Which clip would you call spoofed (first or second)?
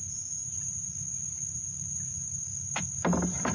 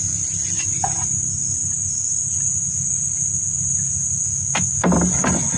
first